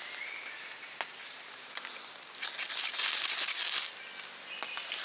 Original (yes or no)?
yes